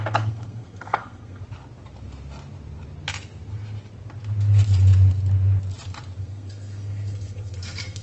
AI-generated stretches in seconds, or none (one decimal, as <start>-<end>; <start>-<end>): 0.0-1.4; 6.2-8.0